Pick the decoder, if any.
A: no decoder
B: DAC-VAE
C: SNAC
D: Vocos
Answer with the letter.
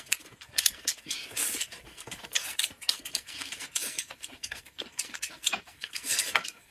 C